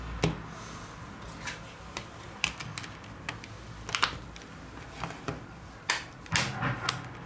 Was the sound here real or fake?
real